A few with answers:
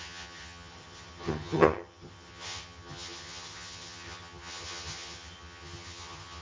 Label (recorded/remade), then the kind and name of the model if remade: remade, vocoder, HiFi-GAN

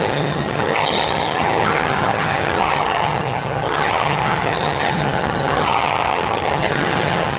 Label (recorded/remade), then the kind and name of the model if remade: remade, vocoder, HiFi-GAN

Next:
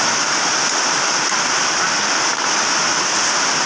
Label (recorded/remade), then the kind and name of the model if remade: recorded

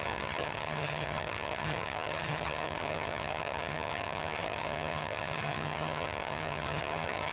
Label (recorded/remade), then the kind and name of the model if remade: remade, vocoder, HiFi-GAN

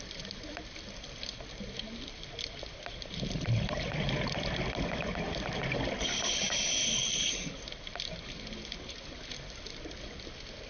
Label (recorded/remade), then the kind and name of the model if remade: recorded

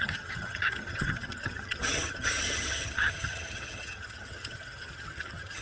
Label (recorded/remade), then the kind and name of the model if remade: remade, vocoder, HiFi-GAN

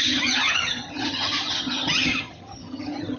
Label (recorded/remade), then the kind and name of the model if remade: remade, vocoder, HiFi-GAN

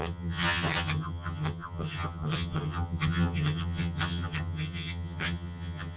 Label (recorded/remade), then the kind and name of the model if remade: remade, vocoder, HiFi-GAN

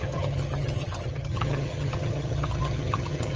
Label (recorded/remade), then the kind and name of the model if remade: remade, vocoder, HiFi-GAN